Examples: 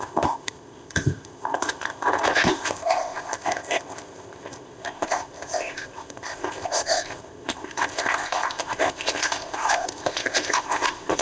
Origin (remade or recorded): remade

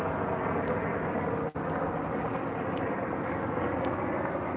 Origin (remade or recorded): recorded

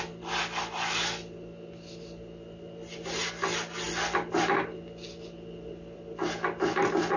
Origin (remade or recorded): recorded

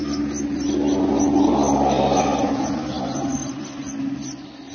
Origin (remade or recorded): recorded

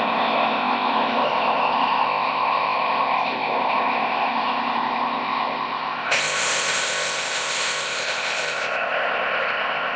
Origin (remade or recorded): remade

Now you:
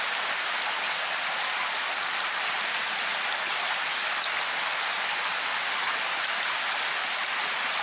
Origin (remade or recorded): recorded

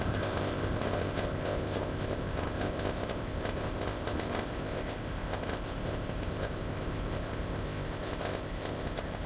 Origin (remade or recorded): remade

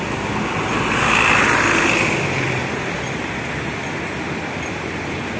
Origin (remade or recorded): recorded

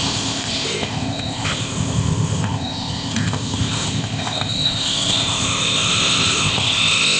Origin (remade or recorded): remade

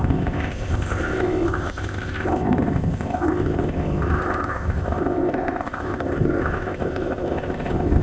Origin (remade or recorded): remade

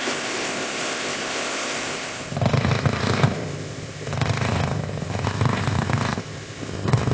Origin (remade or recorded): remade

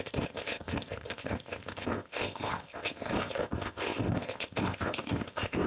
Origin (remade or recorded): remade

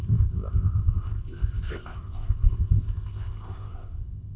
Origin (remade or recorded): remade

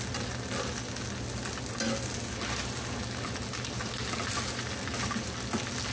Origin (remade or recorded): recorded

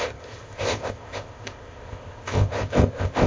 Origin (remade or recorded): remade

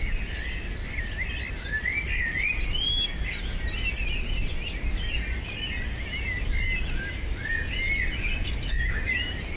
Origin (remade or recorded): recorded